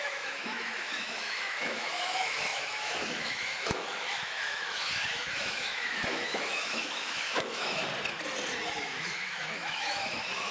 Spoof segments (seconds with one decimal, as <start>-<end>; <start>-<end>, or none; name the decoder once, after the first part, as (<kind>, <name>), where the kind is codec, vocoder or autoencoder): 0.0-7.8 (autoencoder, DAC-VAE); 8.8-10.5